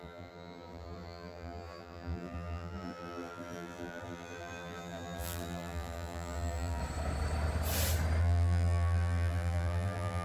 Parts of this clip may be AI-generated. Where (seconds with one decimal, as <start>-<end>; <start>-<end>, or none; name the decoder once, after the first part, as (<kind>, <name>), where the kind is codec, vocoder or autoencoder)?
0.0-6.8 (vocoder, BigVGAN v2); 8.2-10.2